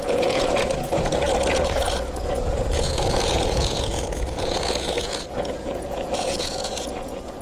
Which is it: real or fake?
fake